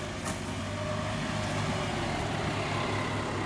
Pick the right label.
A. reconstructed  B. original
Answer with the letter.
B